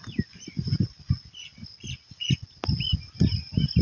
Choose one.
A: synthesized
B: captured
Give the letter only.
B